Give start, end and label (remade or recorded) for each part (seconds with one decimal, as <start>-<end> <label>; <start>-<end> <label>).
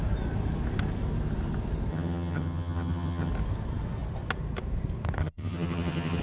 0.0-1.9 recorded; 1.9-3.3 remade; 3.3-5.2 recorded; 5.2-6.2 remade